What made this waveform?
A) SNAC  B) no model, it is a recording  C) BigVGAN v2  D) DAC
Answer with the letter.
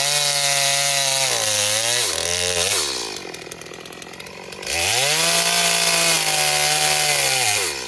B